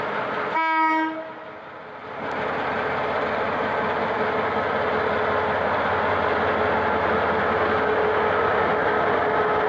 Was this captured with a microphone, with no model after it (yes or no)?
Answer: yes